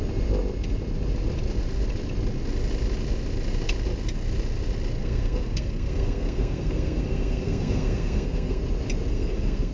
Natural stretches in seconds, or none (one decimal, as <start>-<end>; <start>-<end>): 0.0-5.0; 8.6-9.1